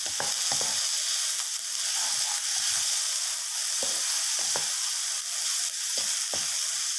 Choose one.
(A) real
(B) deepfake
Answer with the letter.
A